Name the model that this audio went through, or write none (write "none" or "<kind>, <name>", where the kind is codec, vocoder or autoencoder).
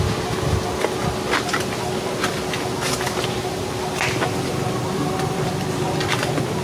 none